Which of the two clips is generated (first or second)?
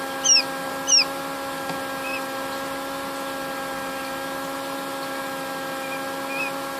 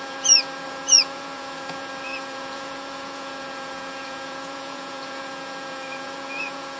second